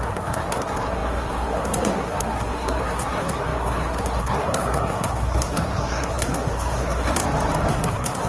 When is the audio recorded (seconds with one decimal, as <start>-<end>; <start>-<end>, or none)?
7.2-7.7